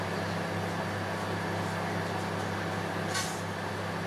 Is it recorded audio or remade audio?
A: recorded